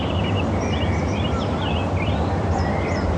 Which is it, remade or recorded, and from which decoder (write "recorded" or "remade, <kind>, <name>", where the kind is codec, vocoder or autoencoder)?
recorded